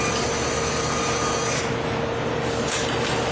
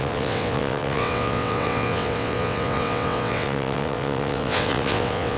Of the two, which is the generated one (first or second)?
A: second